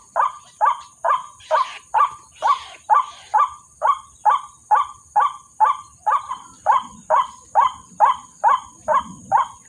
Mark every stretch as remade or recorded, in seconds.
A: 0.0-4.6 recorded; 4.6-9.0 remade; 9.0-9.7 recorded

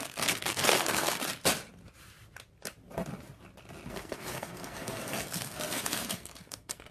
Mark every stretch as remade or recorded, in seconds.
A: 0.0-1.2 remade; 1.2-3.9 recorded; 3.9-6.9 remade

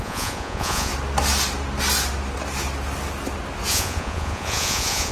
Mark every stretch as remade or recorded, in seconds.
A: 0.0-0.9 remade; 0.9-3.7 recorded; 3.7-5.1 remade

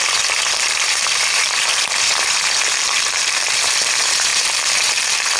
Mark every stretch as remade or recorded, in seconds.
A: 0.0-5.4 remade

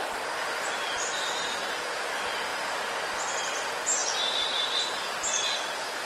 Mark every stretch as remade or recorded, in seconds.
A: 0.0-6.1 recorded

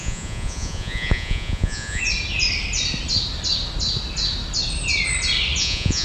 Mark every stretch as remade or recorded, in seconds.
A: 0.0-2.0 remade; 2.0-5.6 recorded; 5.6-6.0 remade